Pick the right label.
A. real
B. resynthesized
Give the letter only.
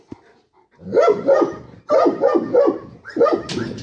A